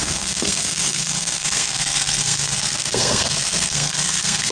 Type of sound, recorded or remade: remade